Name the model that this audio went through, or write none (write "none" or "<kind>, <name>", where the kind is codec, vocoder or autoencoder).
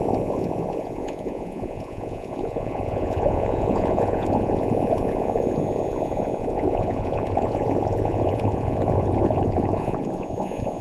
vocoder, Vocos